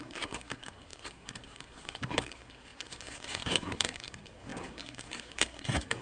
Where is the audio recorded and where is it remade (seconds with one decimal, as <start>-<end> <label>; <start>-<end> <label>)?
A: 0.0-6.0 remade